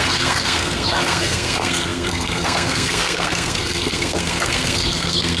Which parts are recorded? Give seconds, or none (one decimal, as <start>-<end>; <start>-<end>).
none